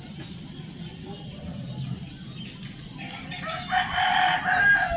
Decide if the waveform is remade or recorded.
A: recorded